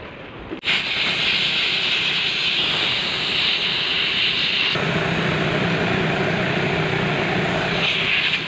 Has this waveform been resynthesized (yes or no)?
no